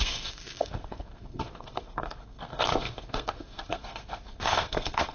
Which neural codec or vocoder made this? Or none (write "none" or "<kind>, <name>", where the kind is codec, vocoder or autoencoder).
codec, SNAC